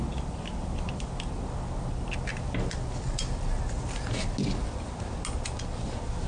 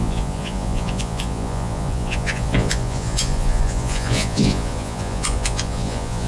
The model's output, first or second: second